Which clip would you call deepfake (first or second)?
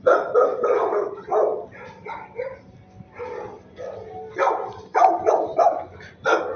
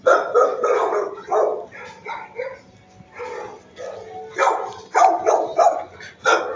first